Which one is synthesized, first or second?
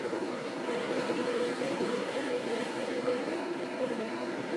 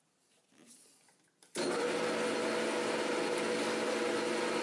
first